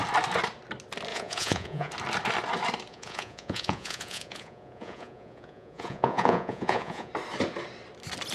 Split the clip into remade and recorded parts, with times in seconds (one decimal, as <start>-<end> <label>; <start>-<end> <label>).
0.0-1.1 recorded; 1.1-1.9 remade; 1.9-2.9 recorded; 2.9-7.1 remade; 7.1-8.3 recorded

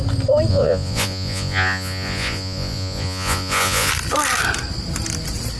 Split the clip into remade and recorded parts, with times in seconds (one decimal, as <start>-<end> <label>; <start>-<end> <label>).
0.0-0.5 recorded; 0.5-3.9 remade; 3.9-5.6 recorded

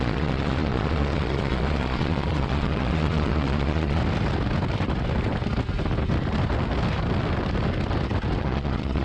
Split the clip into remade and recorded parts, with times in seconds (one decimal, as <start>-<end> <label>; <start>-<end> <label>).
0.0-4.0 remade; 4.0-8.4 recorded; 8.4-9.0 remade

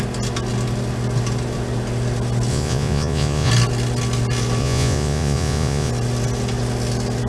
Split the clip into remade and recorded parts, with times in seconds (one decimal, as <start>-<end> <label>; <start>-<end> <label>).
0.0-2.5 recorded; 2.5-3.5 remade; 3.5-4.6 recorded; 4.6-5.9 remade; 5.9-7.3 recorded

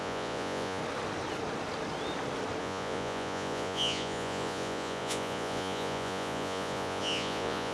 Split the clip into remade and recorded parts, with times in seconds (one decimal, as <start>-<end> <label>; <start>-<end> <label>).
0.0-0.8 remade; 0.8-2.6 recorded; 2.6-7.7 remade

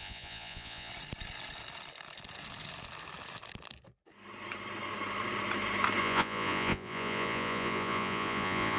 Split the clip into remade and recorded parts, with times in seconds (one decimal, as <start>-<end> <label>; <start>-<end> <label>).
0.0-0.9 remade; 0.9-6.0 recorded; 6.0-8.8 remade